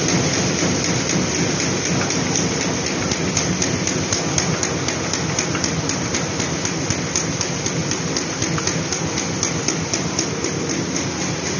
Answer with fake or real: real